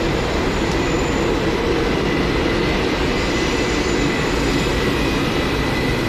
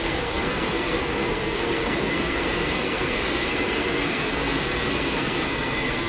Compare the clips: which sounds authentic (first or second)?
first